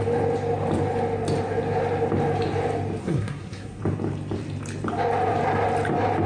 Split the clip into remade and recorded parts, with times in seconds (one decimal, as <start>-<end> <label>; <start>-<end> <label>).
0.0-3.0 recorded; 3.0-3.8 remade; 3.8-6.3 recorded